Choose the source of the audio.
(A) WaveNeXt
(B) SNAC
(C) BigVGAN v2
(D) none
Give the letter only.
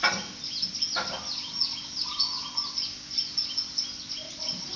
D